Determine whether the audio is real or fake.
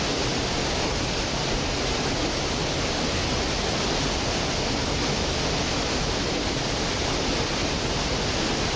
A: real